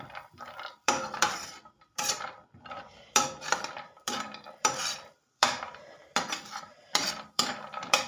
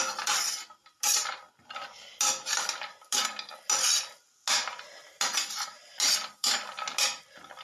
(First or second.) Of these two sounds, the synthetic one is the first